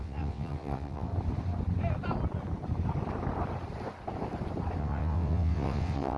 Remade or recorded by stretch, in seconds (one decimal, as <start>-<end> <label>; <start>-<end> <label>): 0.0-1.1 remade; 1.1-4.8 recorded; 4.8-6.2 remade